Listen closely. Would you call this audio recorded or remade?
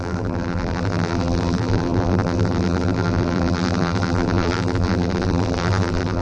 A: remade